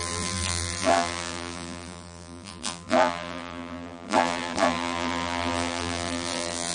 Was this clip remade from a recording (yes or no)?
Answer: yes